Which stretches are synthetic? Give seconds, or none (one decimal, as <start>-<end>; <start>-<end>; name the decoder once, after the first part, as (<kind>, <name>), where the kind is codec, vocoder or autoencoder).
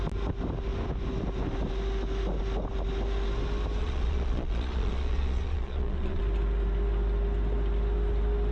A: 3.8-6.2 (vocoder, Vocos)